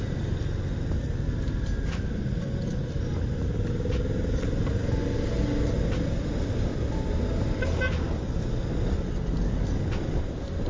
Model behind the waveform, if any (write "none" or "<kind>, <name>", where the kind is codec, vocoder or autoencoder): none